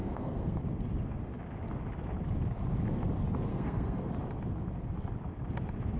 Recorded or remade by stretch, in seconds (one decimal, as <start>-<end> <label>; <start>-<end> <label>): 0.0-0.6 remade; 0.6-3.5 recorded; 3.5-4.1 remade; 4.1-6.0 recorded